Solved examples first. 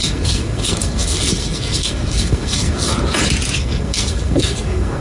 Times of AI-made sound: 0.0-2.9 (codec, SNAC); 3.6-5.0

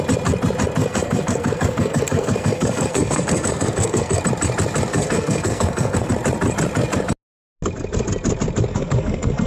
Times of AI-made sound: 0.8-4.2 (codec, SNAC); 4.9-6.1; 8.7-9.5

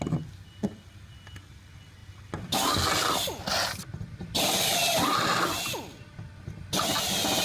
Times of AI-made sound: none

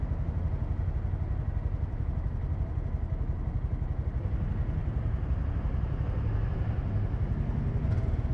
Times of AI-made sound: none

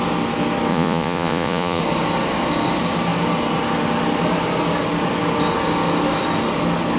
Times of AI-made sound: 0.7-1.8 (vocoder, Vocos)

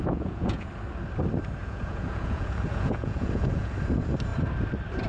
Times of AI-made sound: 0.0-0.7 (vocoder, Vocos); 1.6-3.7

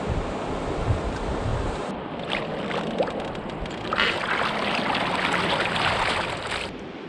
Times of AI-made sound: 1.5-2.4 (vocoder, BigVGAN v2)